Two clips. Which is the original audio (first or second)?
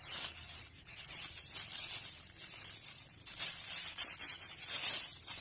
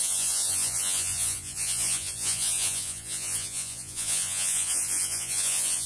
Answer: first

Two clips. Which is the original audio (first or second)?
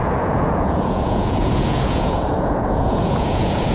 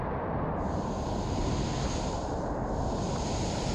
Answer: second